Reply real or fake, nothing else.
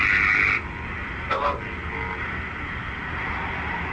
real